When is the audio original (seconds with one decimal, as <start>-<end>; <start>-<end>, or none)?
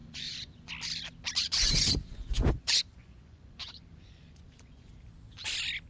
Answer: 0.7-1.4; 4.9-5.9